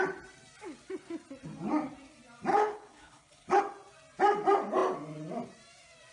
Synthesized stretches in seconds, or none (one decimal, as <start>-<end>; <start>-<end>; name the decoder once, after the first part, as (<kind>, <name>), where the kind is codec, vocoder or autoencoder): 2.5-3.6 (codec, HILCodec)